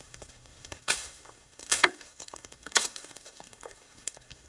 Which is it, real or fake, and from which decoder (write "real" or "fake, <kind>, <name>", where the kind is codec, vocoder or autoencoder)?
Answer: fake, codec, SNAC